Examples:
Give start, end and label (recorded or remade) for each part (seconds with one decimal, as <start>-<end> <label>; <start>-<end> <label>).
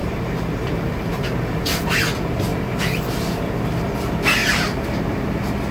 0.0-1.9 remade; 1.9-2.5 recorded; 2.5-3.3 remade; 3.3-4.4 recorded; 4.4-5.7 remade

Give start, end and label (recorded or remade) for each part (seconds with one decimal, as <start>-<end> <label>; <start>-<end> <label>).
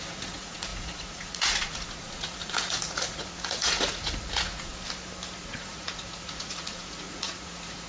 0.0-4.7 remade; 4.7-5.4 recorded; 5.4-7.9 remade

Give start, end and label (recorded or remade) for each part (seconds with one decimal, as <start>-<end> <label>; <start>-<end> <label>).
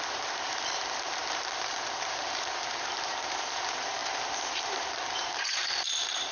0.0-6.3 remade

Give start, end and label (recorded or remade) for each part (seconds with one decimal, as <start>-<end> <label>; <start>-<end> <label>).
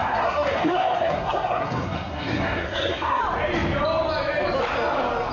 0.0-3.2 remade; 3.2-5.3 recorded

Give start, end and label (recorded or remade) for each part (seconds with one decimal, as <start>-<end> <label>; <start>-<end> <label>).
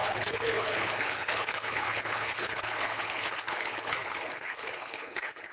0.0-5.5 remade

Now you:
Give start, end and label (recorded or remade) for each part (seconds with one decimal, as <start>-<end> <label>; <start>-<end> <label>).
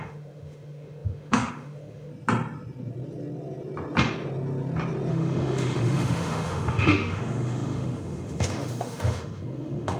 0.0-2.1 remade; 2.1-5.1 recorded; 5.1-10.0 remade